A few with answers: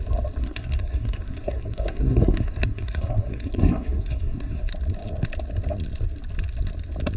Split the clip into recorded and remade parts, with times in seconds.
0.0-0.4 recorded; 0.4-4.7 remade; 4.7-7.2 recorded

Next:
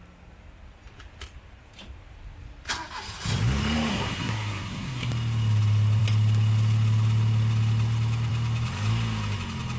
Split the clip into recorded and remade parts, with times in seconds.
0.0-3.9 recorded; 3.9-5.1 remade; 5.1-9.8 recorded

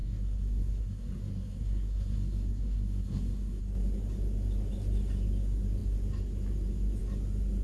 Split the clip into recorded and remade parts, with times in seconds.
0.0-3.6 remade; 3.6-7.6 recorded

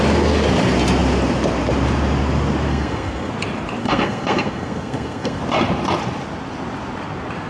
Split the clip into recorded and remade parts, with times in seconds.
0.0-2.7 recorded; 2.7-3.3 remade; 3.3-3.8 recorded; 3.8-5.4 remade; 5.4-7.5 recorded

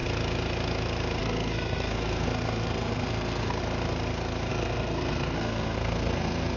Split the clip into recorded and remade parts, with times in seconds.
0.0-1.2 recorded; 1.2-3.6 remade; 3.6-4.5 recorded; 4.5-6.6 remade

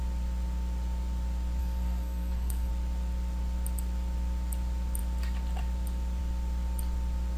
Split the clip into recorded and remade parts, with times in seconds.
0.0-1.6 recorded; 1.6-2.7 remade; 2.7-7.4 recorded

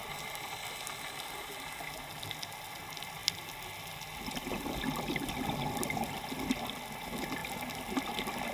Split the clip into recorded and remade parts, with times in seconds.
0.0-8.5 recorded